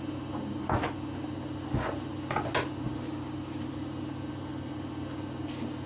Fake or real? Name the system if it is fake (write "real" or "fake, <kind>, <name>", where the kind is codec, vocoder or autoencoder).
real